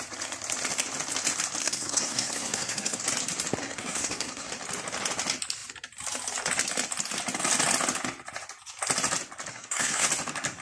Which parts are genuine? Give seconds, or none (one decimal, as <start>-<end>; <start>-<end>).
0.0-1.6; 3.0-3.6; 4.5-9.5; 10.1-10.6